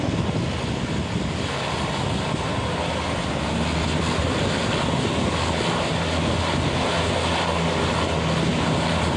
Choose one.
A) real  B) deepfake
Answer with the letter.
A